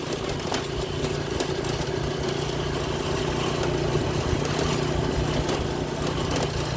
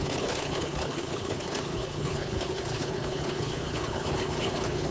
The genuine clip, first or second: first